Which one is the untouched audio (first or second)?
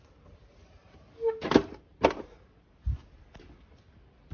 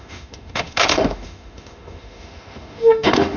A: first